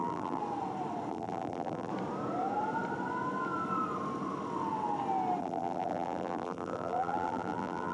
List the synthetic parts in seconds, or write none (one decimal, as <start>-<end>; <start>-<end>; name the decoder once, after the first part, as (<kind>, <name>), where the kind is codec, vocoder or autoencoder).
0.0-0.4 (vocoder, BigVGAN v2); 1.1-1.9; 5.4-7.9